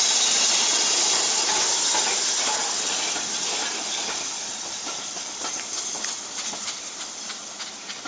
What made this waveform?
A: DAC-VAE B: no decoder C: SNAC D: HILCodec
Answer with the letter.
B